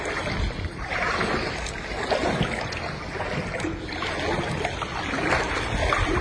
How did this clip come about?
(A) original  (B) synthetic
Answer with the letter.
A